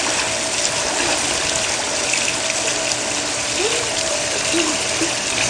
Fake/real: real